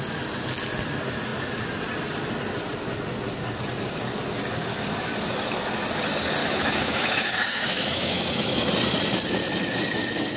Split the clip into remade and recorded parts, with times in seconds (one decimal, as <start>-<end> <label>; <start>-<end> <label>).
0.0-6.4 recorded; 6.4-8.7 remade; 8.7-10.4 recorded